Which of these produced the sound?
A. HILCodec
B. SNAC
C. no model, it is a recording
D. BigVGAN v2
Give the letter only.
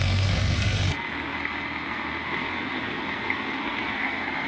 B